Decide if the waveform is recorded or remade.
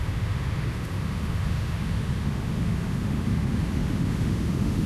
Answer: remade